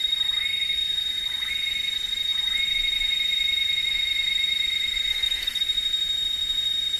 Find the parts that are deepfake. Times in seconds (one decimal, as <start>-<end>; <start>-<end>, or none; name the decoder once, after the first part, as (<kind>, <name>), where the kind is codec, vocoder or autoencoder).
5.1-5.6 (codec, SNAC)